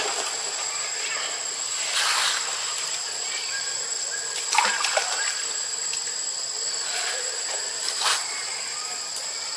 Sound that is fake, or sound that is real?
fake